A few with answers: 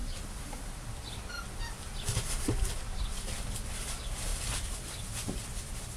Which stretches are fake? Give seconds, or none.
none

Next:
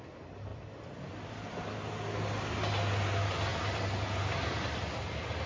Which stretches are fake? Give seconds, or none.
0.5-1.0

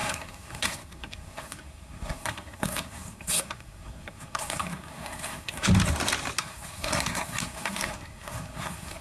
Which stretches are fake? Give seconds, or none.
0.0-5.7; 6.4-9.0

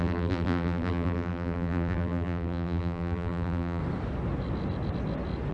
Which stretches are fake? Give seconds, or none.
0.0-3.8

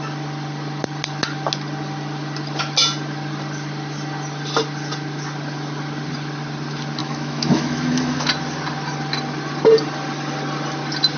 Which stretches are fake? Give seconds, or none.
7.0-8.3

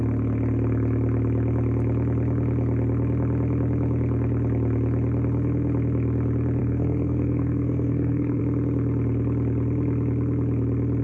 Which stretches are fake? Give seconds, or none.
6.6-8.4

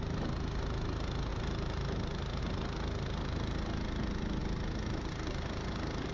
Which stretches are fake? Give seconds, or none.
none

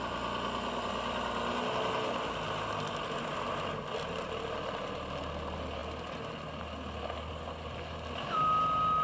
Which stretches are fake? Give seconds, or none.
none